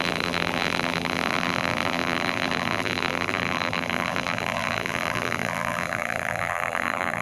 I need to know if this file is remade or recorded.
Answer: remade